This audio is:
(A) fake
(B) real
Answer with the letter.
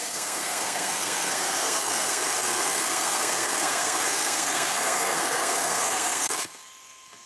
A